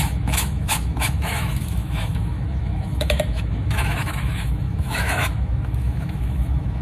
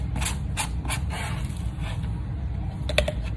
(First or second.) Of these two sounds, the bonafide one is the second